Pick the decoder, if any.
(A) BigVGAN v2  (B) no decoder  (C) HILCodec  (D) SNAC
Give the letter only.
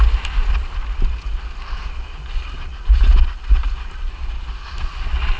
B